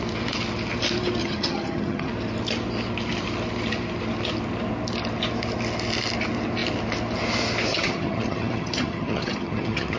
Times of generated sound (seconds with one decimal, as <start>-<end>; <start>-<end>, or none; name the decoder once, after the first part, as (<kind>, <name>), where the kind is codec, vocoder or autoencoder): 1.2-2.1 (vocoder, HiFi-GAN); 7.7-10.0

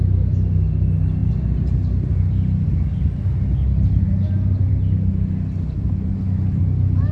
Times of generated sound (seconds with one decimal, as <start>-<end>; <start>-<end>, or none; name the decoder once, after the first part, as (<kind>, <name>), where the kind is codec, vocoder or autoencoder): none

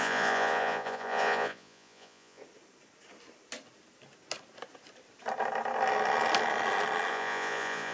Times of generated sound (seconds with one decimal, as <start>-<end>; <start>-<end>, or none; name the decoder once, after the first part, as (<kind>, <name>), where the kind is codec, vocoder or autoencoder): 0.0-2.4 (vocoder, Vocos); 7.1-7.9

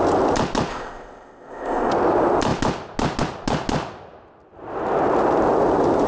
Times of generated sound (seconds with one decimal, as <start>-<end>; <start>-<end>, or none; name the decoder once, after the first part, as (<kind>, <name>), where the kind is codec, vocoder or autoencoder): 0.7-1.9 (codec, ZipCodec)

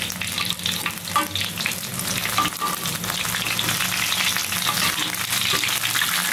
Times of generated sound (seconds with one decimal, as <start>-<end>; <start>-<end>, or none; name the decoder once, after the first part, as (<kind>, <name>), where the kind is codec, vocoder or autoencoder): none

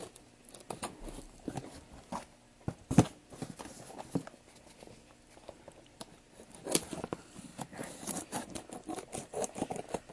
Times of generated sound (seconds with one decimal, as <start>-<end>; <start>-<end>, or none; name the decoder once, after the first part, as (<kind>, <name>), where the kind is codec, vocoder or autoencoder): 7.5-8.4 (vocoder, BigVGAN v2)

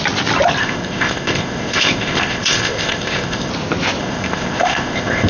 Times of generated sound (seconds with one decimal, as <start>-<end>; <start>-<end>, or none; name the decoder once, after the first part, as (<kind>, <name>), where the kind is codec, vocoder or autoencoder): 0.6-3.5 (codec, ZipCodec); 4.0-5.3

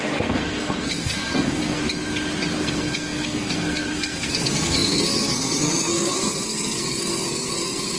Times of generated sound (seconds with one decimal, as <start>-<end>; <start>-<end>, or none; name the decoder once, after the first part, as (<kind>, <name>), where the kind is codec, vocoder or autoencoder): 0.0-1.8 (codec, SNAC); 2.6-8.0